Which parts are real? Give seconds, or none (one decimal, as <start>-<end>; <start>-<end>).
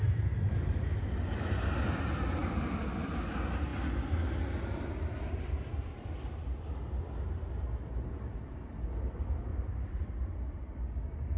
0.0-9.5; 10.0-11.4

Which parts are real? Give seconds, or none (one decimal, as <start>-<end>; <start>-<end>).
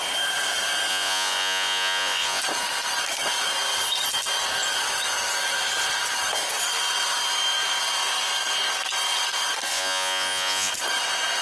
0.0-0.9; 2.4-9.7; 10.7-11.4